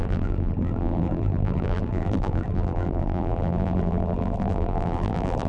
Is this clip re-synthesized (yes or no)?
yes